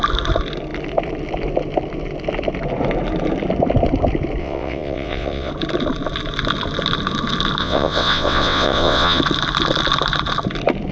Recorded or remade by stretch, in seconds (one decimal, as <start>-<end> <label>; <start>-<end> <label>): 0.0-4.4 recorded; 4.4-5.5 remade; 5.5-7.6 recorded; 7.6-9.2 remade; 9.2-10.9 recorded

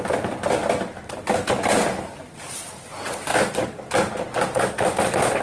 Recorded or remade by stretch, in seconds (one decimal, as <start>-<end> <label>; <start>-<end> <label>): 0.0-5.4 recorded

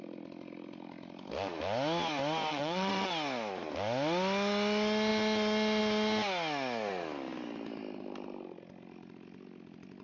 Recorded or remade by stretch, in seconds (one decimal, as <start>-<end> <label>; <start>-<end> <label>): 0.0-2.5 recorded; 2.5-3.1 remade; 3.1-10.0 recorded

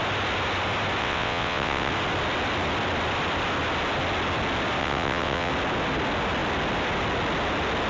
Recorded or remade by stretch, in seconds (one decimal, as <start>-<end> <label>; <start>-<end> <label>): 0.0-1.0 recorded; 1.0-1.9 remade; 1.9-4.8 recorded; 4.8-5.5 remade; 5.5-7.9 recorded

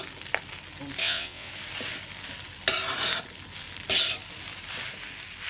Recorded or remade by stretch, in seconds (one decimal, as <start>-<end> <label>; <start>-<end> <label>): 0.0-1.0 recorded; 1.0-1.5 remade; 1.5-5.5 recorded

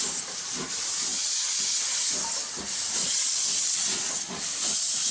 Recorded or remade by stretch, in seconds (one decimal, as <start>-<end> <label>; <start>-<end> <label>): 0.0-3.0 recorded; 3.0-3.8 remade; 3.8-5.1 recorded

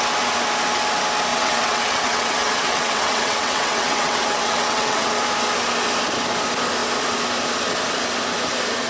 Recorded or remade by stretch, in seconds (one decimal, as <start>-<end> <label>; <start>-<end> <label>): 0.0-1.3 recorded; 1.3-5.1 remade; 5.1-8.9 recorded